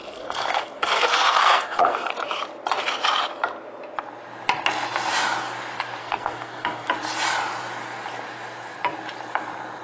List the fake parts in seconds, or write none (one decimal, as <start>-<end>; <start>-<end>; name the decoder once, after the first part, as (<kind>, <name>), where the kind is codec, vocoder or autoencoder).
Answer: 0.0-2.1 (codec, SNAC); 6.0-6.9